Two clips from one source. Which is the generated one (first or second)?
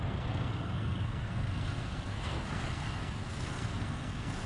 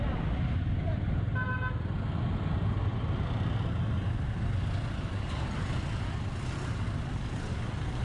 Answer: first